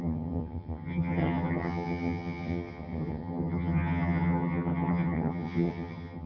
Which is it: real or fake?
fake